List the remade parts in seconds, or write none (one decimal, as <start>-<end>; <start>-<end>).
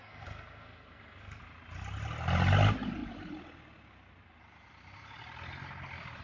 0.0-1.4